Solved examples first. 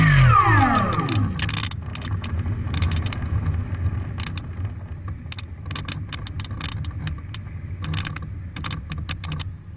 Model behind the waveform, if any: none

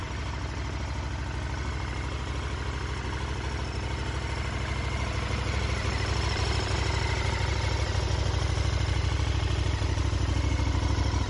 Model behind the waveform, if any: none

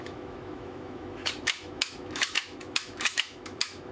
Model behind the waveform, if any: autoencoder, DAC-VAE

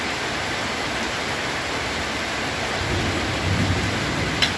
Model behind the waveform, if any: none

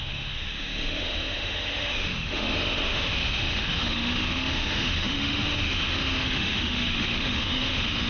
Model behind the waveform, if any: autoencoder, DAC-VAE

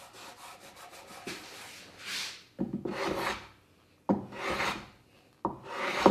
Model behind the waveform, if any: none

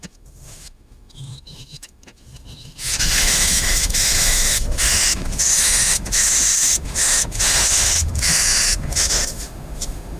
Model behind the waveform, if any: autoencoder, DAC-VAE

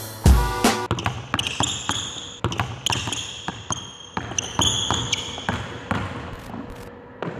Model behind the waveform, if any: none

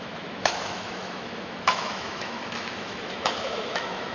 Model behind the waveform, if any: autoencoder, DAC-VAE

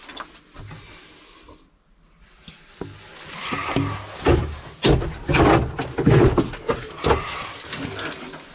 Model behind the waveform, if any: none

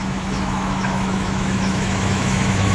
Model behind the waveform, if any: autoencoder, DAC-VAE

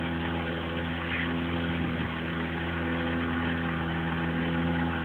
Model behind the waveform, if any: none